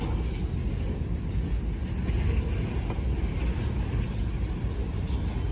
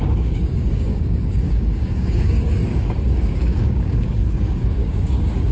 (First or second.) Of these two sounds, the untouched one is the first